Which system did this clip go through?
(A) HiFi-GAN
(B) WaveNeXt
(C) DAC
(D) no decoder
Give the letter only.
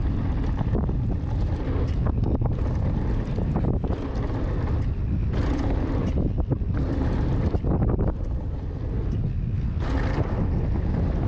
D